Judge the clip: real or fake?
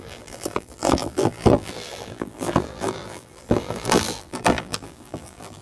fake